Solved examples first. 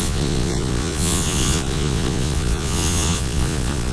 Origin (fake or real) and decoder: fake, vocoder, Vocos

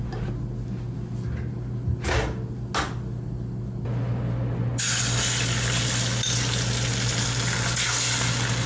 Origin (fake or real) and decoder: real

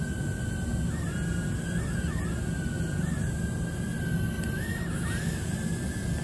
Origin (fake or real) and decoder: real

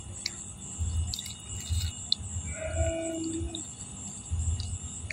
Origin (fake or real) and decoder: real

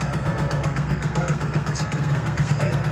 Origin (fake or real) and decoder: fake, codec, SNAC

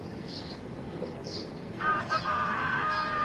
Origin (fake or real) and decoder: fake, codec, SNAC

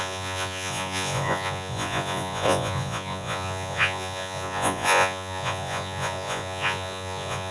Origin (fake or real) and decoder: fake, vocoder, Vocos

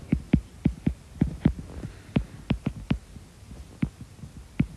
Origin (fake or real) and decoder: real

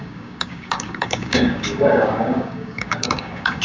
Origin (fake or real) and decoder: fake, codec, DAC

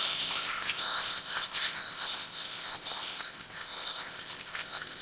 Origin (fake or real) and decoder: fake, codec, ZipCodec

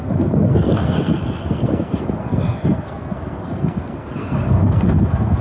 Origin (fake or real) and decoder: fake, codec, SNAC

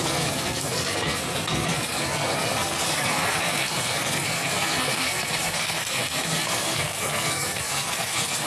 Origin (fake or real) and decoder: fake, codec, SNAC